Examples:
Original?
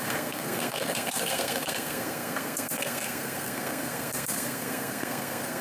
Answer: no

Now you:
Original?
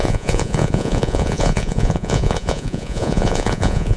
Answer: no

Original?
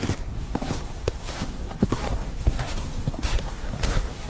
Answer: no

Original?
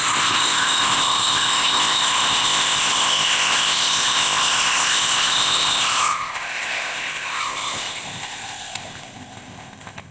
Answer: no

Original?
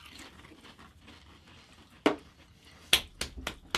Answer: yes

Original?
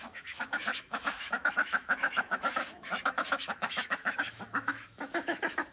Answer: no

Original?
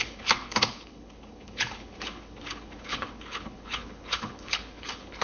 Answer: no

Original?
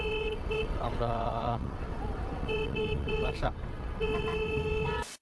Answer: no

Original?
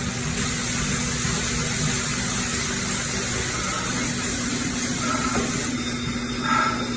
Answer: yes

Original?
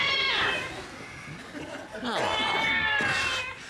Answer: yes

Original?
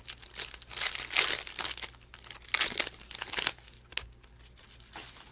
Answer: yes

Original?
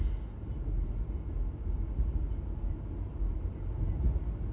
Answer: yes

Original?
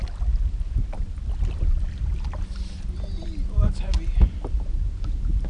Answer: yes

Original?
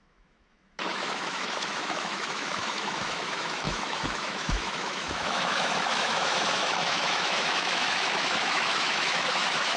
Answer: no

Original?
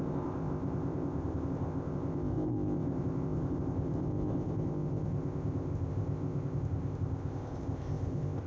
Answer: no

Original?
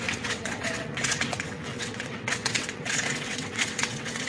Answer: no